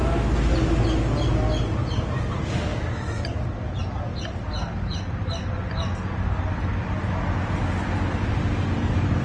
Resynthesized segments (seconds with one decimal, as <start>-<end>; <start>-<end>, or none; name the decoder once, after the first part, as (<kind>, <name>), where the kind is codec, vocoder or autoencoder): none